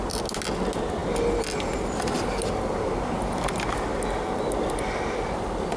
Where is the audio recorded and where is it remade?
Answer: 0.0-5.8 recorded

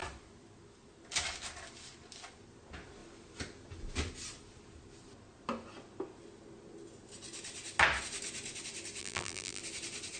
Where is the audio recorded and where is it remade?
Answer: 0.0-9.0 recorded; 9.0-9.6 remade; 9.6-10.2 recorded

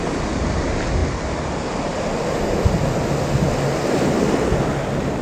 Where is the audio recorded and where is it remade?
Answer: 0.0-5.2 recorded

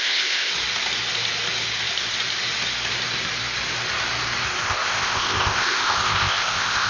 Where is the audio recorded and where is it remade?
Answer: 0.0-0.5 remade; 0.5-4.6 recorded; 4.6-6.9 remade